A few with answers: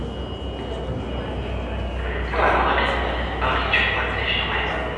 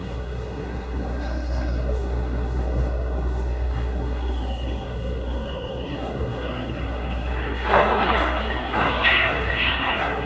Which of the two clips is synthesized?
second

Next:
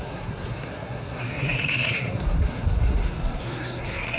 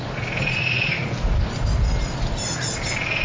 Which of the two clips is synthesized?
first